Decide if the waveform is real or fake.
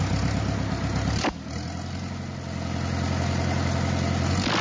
real